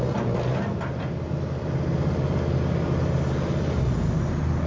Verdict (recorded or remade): recorded